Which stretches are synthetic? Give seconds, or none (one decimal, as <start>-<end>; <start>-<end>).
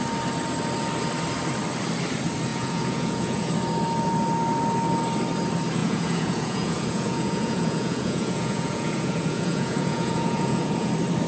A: 2.5-3.5; 5.8-10.9